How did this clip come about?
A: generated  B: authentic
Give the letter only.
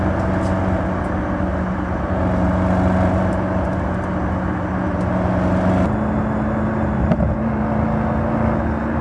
B